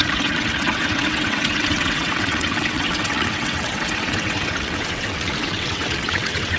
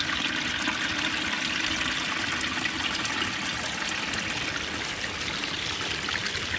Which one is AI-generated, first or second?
first